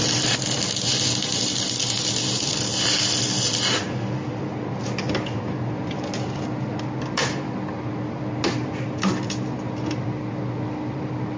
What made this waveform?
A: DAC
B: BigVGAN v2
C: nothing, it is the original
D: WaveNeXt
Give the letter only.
C